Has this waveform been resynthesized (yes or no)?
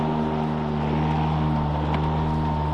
no